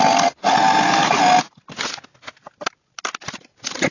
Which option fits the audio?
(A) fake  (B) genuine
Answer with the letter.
B